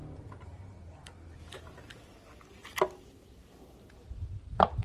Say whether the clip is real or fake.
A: real